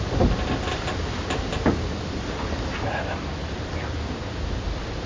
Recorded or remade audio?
recorded